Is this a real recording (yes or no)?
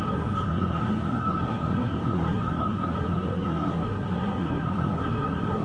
no